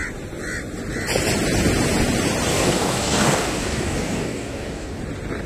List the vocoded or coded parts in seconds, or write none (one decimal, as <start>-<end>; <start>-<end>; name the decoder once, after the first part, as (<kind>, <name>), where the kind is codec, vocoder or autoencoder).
2.5-5.0 (codec, DAC)